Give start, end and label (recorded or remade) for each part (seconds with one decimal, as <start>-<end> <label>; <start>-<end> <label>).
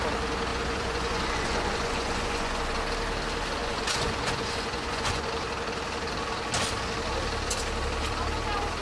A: 0.0-0.5 recorded; 0.5-2.8 remade; 2.8-3.6 recorded; 3.6-5.3 remade; 5.3-8.8 recorded